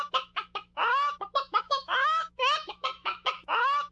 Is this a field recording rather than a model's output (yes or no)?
no